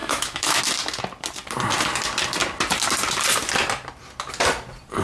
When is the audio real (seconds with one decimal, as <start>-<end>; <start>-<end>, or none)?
0.6-5.0